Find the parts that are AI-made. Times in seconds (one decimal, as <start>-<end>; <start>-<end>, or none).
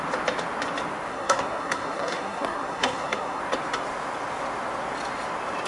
1.1-3.4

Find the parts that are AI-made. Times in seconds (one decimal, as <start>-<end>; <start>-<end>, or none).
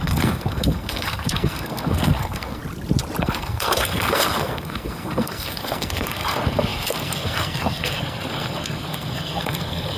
0.0-2.6; 3.2-10.0